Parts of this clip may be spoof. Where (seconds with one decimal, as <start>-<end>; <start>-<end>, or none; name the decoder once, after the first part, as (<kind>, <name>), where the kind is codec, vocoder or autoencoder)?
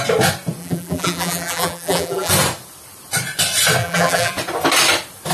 0.6-2.3 (vocoder, BigVGAN v2); 3.8-4.3